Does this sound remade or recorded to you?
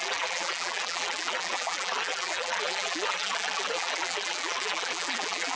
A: remade